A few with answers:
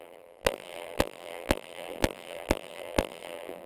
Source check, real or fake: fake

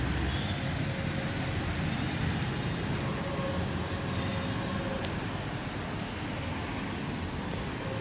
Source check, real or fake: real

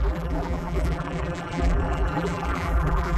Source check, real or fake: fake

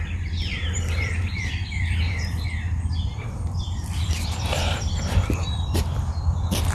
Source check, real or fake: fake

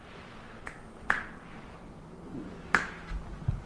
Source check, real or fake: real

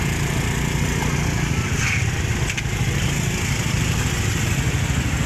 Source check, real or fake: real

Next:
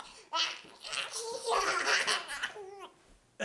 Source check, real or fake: real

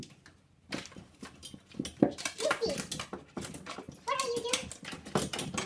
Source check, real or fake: real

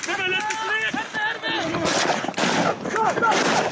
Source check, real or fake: real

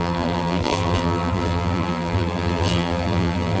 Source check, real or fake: fake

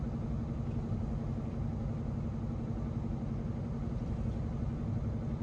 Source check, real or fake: real